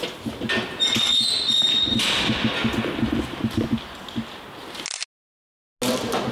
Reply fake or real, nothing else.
real